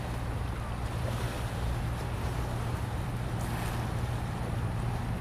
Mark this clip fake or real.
real